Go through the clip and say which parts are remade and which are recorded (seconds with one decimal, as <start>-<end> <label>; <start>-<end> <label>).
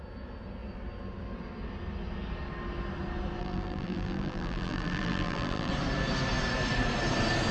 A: 0.0-3.4 recorded; 3.4-5.7 remade; 5.7-7.5 recorded